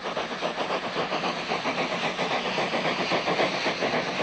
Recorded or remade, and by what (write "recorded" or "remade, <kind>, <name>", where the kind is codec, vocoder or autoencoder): recorded